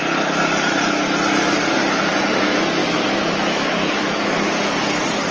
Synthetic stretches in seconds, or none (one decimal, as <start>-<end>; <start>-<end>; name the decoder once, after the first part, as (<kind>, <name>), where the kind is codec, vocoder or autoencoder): 2.8-4.5 (autoencoder, DAC-VAE)